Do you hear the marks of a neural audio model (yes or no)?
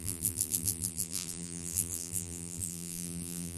yes